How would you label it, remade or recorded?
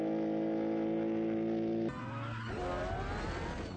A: recorded